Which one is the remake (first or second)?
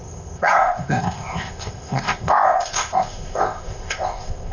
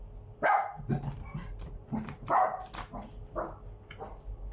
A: first